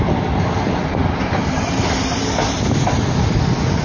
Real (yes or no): yes